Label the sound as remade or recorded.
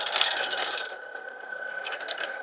remade